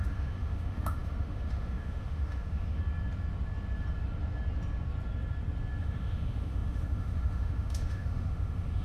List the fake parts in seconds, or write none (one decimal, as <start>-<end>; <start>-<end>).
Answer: 0.0-2.8; 5.8-8.8